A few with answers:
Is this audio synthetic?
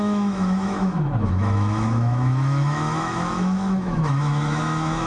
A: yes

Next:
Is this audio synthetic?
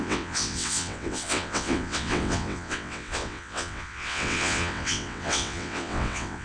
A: yes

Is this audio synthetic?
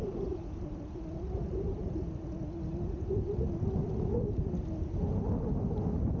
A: no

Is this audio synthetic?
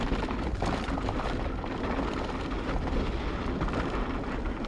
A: no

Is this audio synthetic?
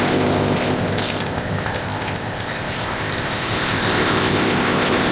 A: yes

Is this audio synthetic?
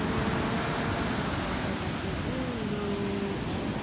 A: no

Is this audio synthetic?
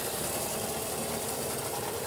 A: no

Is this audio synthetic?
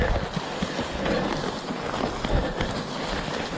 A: no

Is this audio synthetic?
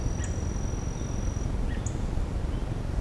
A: no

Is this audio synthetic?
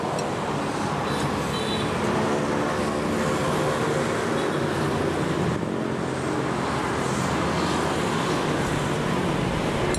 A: no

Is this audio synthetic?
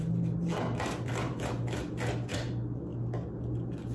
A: no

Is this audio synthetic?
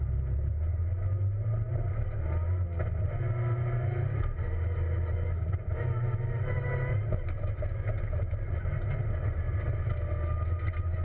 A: no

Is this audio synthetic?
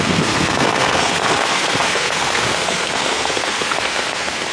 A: yes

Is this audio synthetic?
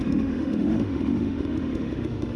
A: yes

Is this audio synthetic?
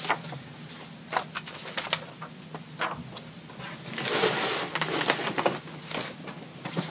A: no